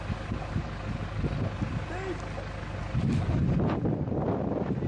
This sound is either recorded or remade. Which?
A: recorded